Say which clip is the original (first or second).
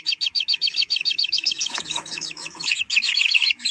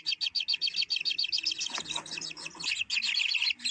second